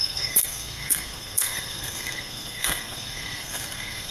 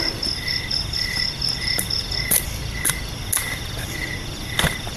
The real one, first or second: second